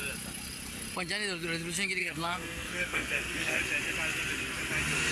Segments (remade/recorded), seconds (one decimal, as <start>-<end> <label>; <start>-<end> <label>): 0.0-2.0 recorded; 2.0-3.6 remade; 3.6-5.1 recorded